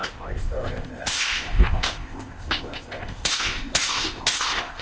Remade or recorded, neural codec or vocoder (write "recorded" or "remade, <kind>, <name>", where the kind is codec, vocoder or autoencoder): remade, codec, ZipCodec